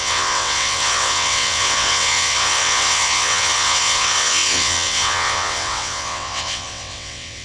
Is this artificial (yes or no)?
yes